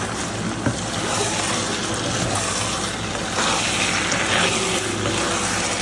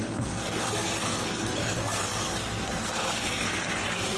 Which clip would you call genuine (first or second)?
first